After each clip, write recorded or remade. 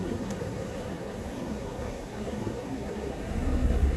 remade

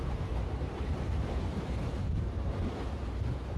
remade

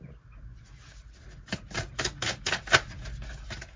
recorded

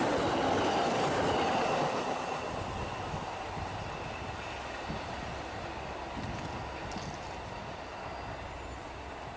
recorded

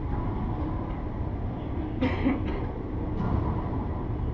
recorded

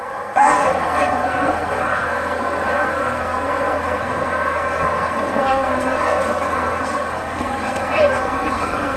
remade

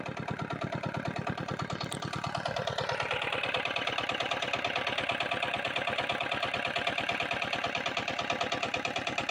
recorded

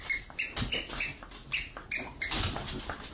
recorded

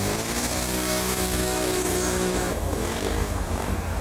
remade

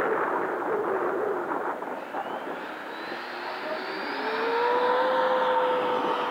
recorded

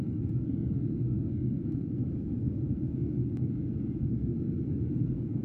remade